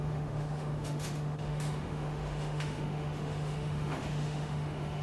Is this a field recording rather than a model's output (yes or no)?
no